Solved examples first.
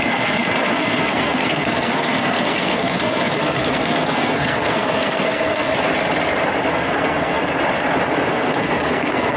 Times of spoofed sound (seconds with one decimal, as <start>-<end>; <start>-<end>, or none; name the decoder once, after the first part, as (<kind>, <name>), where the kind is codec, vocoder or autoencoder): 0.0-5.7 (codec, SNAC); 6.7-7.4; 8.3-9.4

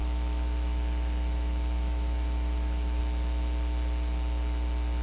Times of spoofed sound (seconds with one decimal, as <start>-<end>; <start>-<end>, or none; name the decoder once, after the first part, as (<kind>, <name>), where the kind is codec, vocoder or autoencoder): 0.0-3.0 (autoencoder, DAC-VAE)

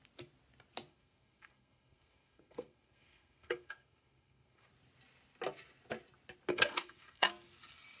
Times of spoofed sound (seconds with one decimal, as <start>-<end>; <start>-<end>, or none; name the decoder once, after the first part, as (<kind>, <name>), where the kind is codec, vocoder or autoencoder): 0.9-4.7 (codec, SNAC); 6.5-7.3

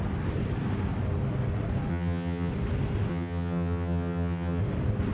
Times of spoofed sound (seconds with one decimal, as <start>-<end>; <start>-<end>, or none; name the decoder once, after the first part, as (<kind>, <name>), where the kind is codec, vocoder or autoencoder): 1.9-2.5 (vocoder, HiFi-GAN); 3.1-4.6

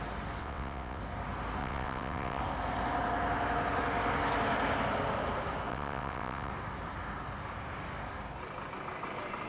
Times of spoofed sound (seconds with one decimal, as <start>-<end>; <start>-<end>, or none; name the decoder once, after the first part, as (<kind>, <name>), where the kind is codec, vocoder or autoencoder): 0.4-1.0 (vocoder, WaveNeXt); 1.6-2.4; 5.7-6.5